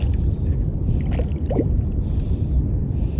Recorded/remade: recorded